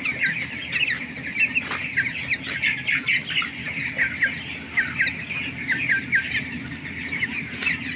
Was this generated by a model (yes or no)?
no